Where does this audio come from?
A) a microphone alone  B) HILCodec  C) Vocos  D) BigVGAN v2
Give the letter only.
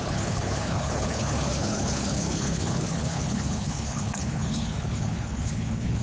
B